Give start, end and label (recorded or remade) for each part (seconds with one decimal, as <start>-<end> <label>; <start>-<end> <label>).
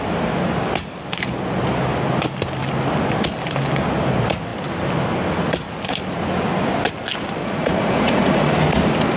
0.0-7.4 recorded; 7.4-8.5 remade; 8.5-9.2 recorded